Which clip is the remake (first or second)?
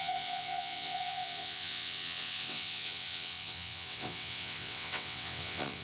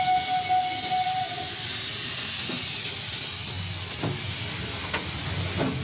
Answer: first